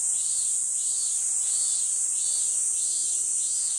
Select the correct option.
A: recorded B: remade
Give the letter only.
A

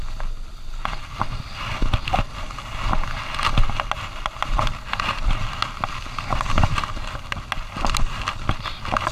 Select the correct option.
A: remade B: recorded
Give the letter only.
B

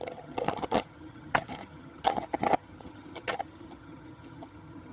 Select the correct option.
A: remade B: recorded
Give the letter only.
A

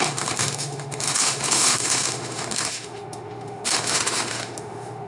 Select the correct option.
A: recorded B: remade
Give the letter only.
B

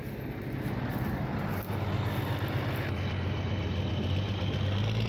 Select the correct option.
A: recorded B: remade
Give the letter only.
A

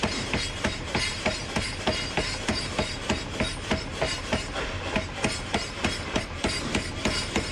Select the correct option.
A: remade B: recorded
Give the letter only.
A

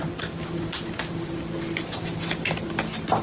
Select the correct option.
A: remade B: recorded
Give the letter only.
B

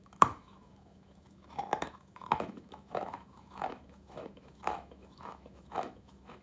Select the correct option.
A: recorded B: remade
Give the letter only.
B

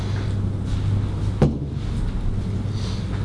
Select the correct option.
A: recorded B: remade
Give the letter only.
A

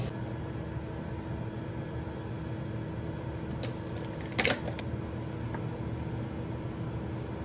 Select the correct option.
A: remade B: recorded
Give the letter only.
B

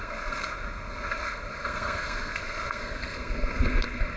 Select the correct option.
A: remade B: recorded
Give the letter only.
A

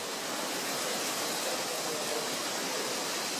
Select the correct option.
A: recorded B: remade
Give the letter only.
A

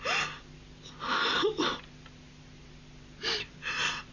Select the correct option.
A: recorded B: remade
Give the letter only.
A